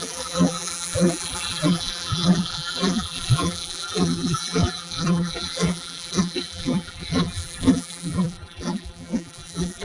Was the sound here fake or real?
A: fake